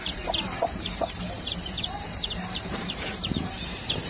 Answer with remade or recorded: remade